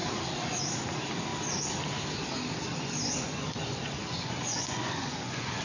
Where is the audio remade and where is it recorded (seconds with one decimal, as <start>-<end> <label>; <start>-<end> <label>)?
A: 0.0-2.7 recorded; 2.7-5.6 remade